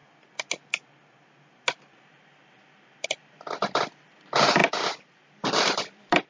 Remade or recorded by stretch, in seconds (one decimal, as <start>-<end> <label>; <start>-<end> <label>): 0.0-2.2 recorded; 2.2-6.3 remade